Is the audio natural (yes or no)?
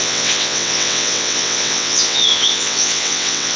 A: no